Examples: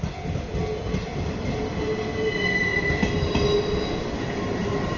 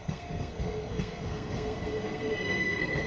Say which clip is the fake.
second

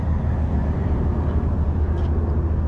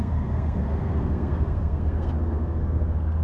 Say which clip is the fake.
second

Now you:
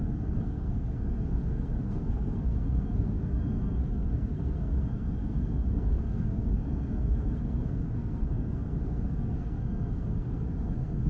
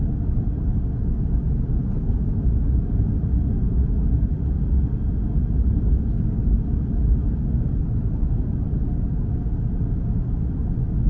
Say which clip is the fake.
first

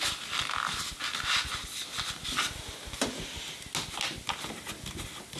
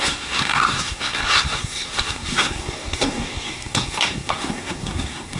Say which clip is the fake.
second